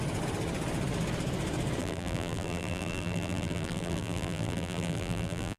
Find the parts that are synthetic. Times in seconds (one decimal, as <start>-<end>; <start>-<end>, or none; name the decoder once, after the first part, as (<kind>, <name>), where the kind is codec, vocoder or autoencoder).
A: 1.8-5.6 (vocoder, BigVGAN v2)